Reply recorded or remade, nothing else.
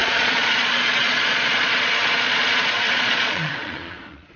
remade